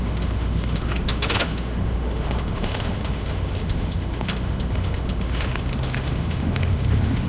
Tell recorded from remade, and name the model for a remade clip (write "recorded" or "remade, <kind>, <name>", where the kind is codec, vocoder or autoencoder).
remade, autoencoder, DAC-VAE